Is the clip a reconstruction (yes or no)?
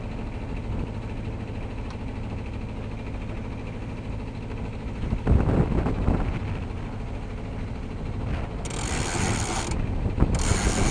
no